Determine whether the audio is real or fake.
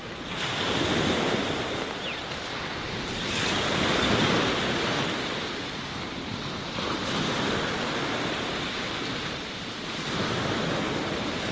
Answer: real